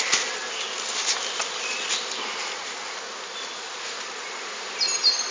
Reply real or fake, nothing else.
real